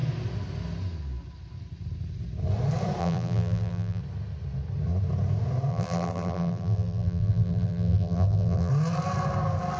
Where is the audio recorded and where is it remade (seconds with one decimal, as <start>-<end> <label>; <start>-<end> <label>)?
0.0-3.0 recorded; 3.0-4.0 remade; 4.0-5.7 recorded; 5.7-8.7 remade; 8.7-9.8 recorded